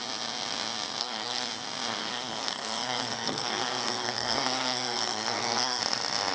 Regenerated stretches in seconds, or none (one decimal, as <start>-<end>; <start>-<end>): 1.0-1.5; 2.0-5.8